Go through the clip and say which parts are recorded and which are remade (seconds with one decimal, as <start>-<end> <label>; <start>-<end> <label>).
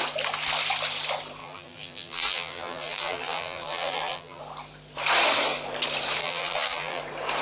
0.0-1.4 recorded; 1.4-4.4 remade; 4.4-6.2 recorded; 6.2-7.0 remade; 7.0-7.4 recorded